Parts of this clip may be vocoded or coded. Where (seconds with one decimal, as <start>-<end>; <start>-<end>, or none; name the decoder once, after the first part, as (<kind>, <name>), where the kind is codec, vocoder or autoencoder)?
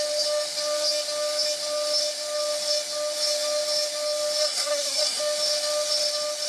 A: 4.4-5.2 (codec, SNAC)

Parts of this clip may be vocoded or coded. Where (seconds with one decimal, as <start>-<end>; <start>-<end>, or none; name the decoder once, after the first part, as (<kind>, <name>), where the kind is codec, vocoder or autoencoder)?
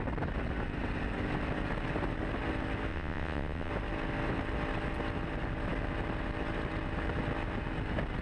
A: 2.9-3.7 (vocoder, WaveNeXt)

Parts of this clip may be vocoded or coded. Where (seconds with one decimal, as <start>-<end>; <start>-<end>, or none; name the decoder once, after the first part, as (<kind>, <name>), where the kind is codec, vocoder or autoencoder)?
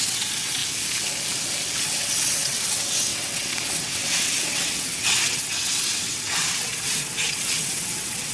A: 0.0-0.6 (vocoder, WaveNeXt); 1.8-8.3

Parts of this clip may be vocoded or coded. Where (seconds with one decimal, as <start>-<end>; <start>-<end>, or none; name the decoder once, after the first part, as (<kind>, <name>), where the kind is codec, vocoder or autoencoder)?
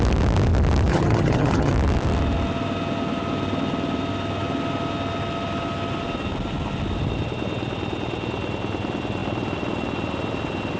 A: 0.9-1.7 (vocoder, HiFi-GAN)